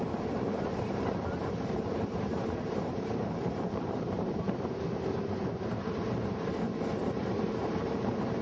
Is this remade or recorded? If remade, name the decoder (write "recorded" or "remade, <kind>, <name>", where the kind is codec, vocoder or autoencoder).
remade, vocoder, BigVGAN v2